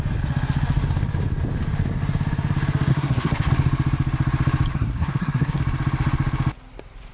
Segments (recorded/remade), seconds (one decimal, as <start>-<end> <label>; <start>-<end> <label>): 0.0-2.9 recorded; 2.9-3.5 remade; 3.5-4.7 recorded; 4.7-5.6 remade; 5.6-7.1 recorded